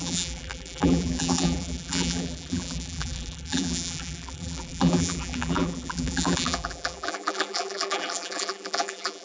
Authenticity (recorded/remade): remade